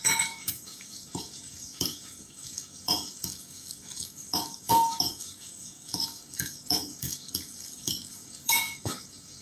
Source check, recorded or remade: remade